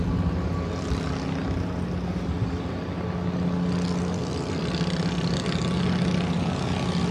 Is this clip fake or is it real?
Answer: real